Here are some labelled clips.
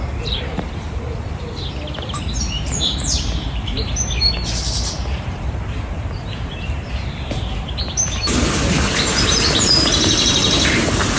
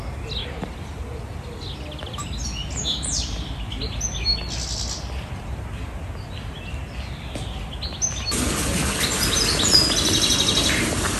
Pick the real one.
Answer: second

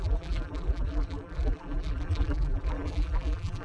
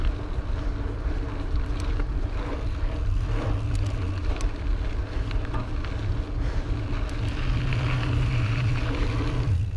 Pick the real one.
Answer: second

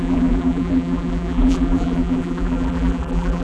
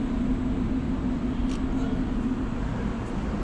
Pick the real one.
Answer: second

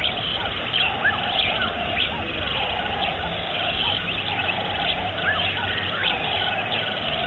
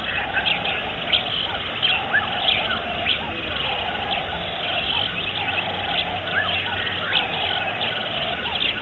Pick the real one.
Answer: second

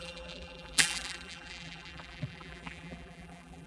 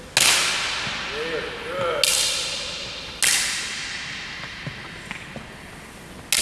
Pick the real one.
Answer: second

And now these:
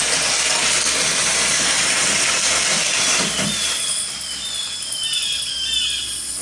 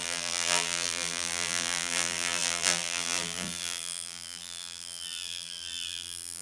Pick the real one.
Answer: first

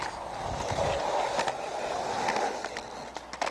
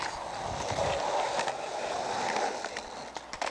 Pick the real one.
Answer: first